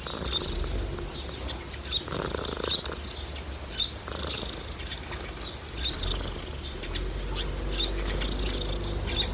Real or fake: real